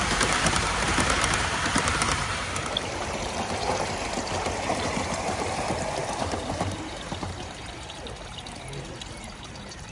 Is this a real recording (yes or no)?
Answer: no